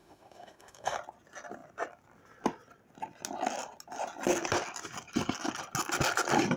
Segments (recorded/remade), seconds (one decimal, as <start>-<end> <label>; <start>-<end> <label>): 0.0-1.0 remade; 1.0-6.6 recorded